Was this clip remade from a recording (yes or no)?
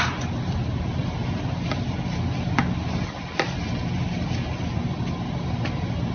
no